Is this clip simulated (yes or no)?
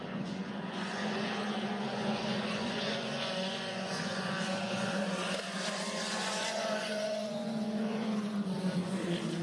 yes